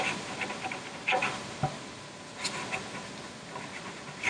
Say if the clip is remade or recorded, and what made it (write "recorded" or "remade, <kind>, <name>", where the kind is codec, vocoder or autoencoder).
recorded